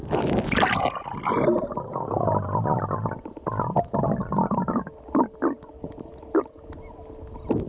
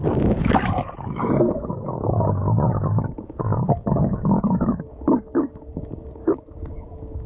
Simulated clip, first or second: second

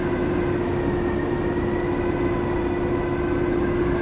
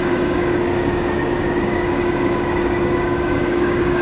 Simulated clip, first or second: second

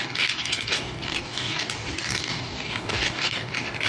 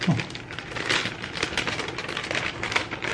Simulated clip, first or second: first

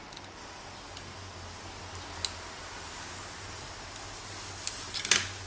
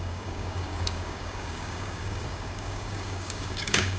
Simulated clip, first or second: second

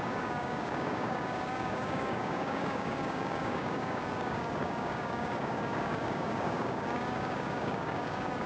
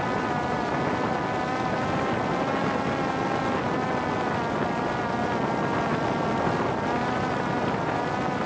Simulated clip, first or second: first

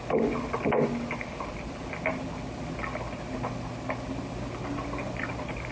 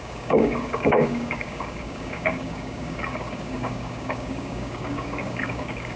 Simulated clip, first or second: second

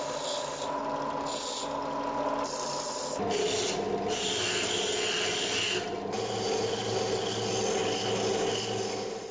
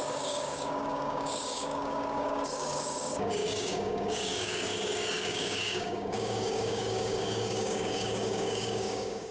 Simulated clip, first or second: second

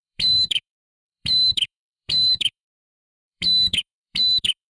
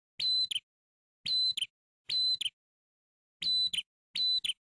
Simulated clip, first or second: first